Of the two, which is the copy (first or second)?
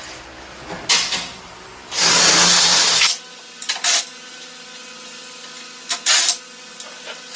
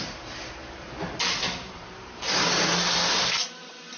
second